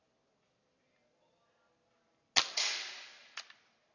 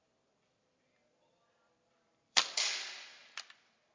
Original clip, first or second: first